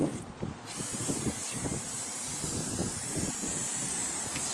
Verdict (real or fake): fake